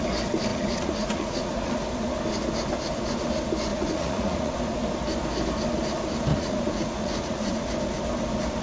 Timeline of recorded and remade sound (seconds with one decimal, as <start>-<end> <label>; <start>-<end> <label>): 0.0-0.5 recorded; 0.5-1.7 remade; 1.7-3.7 recorded; 3.7-4.5 remade; 4.5-6.3 recorded; 6.3-7.7 remade; 7.7-8.6 recorded